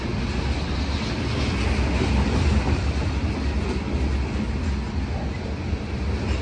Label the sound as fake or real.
real